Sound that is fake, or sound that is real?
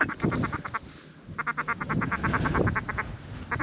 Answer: real